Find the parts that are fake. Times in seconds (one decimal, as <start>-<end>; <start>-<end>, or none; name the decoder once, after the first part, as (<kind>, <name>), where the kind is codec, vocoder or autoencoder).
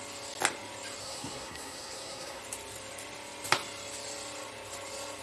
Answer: 1.0-2.4 (codec, SNAC)